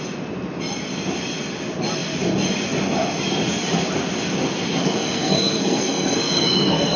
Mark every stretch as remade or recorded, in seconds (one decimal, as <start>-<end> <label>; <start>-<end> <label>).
0.0-4.8 recorded; 4.8-7.0 remade